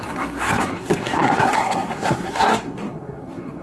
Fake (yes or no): yes